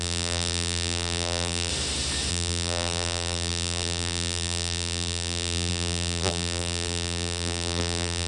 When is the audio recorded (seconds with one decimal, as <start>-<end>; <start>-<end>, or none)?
1.7-2.3